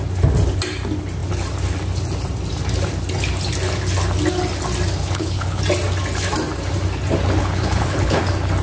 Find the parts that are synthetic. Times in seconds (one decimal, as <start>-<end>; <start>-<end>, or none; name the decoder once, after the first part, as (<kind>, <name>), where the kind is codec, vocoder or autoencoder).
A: 5.0-5.6 (codec, HILCodec); 7.4-8.2